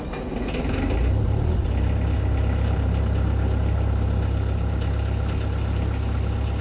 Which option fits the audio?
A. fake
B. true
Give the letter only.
B